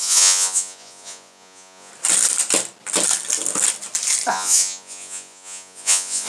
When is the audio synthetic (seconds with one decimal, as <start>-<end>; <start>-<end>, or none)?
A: 0.0-1.9; 4.3-6.3

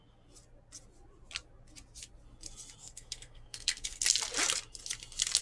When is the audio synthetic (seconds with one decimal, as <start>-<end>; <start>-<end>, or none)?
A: 2.8-4.0

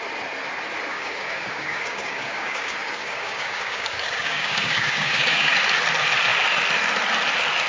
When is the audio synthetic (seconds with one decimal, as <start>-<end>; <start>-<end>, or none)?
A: 0.9-5.5

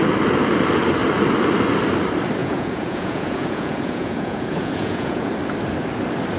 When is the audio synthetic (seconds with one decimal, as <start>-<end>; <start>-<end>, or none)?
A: 2.4-5.3

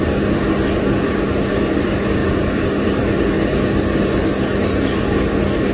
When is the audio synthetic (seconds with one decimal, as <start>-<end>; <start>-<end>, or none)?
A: none

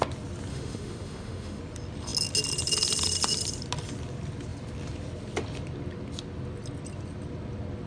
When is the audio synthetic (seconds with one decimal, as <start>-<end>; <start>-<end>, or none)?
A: 0.5-1.6